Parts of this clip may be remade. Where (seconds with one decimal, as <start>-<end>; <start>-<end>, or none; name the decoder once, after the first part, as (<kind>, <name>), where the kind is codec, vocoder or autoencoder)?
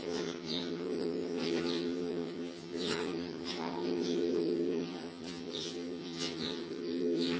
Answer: 0.0-7.4 (vocoder, HiFi-GAN)